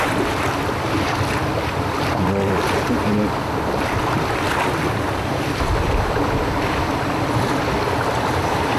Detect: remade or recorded remade